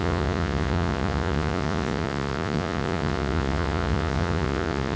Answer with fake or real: fake